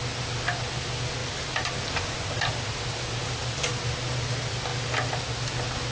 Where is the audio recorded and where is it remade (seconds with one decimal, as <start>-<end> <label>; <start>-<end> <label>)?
0.0-5.9 recorded